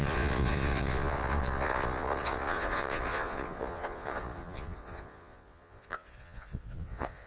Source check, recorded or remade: remade